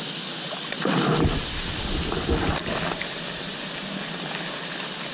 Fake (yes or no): no